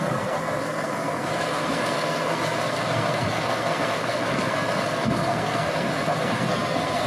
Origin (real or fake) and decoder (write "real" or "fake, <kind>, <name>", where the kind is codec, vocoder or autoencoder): fake, codec, SNAC